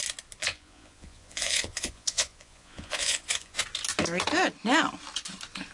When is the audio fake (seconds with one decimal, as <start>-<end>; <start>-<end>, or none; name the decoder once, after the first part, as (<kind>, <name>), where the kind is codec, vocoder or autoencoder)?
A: 0.4-3.6 (vocoder, Vocos)